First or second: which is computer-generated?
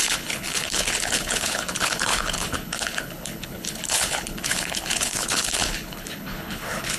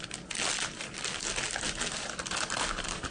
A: first